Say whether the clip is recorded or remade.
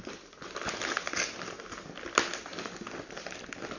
recorded